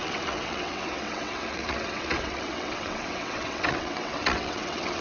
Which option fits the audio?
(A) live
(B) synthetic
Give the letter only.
B